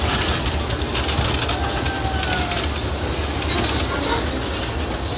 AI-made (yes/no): no